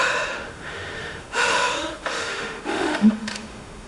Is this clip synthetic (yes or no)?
yes